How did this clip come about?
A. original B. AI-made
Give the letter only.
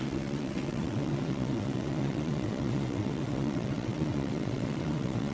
B